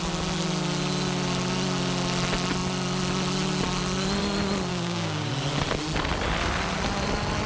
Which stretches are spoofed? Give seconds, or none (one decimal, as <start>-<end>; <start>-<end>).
4.7-5.3